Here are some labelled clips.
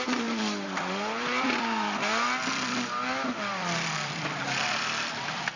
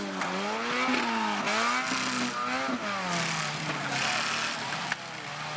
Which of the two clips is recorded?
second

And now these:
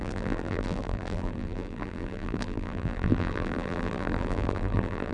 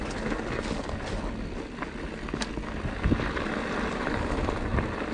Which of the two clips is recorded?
second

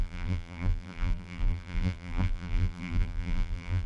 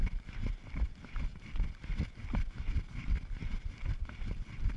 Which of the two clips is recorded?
second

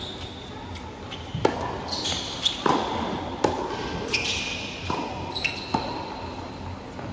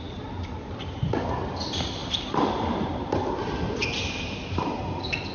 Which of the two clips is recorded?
first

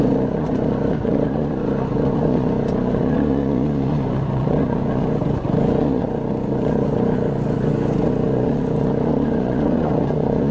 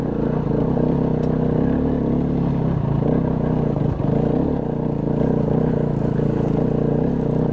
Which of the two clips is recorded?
second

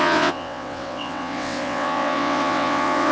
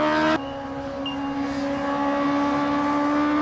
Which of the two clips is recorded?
second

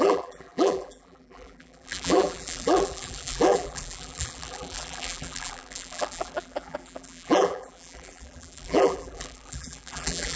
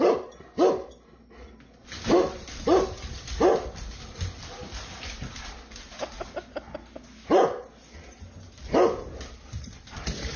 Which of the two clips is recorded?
second